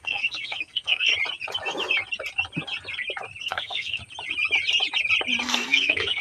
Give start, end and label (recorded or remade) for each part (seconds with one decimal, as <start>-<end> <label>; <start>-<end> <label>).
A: 0.0-1.1 remade; 1.1-3.4 recorded; 3.4-4.0 remade; 4.0-5.4 recorded; 5.4-6.2 remade